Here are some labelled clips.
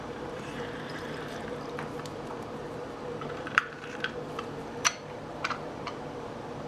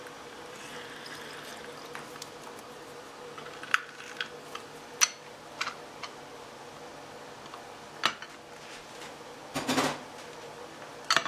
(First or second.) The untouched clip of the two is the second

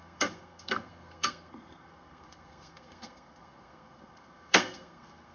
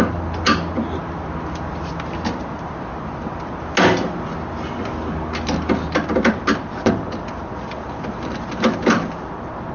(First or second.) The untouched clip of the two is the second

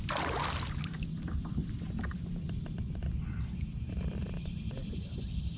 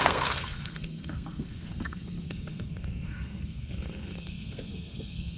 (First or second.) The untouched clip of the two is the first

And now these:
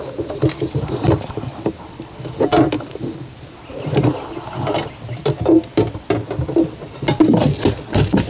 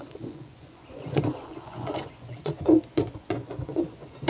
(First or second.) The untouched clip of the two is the first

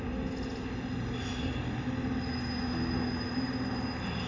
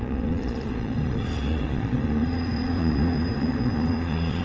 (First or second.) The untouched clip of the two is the first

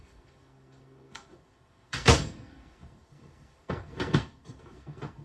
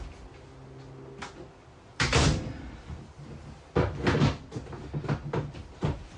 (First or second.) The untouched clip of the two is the second